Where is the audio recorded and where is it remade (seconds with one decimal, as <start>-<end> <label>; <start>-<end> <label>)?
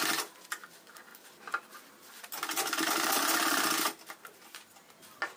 0.0-5.4 recorded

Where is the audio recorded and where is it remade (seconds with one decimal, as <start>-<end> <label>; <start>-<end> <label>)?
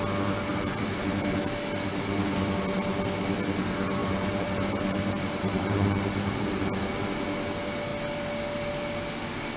0.0-0.5 recorded; 0.5-1.4 remade; 1.4-4.0 recorded; 4.0-6.8 remade; 6.8-9.6 recorded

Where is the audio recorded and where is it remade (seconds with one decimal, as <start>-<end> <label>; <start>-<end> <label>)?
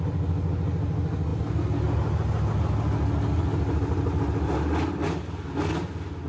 0.0-6.3 recorded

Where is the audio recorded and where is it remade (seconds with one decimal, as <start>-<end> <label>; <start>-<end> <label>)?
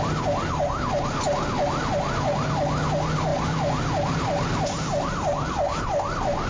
0.0-6.5 recorded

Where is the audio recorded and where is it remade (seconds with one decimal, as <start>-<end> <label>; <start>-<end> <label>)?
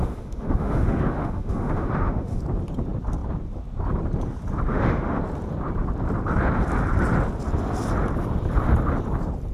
0.0-2.4 remade; 2.4-4.7 recorded; 4.7-5.2 remade; 5.2-9.5 recorded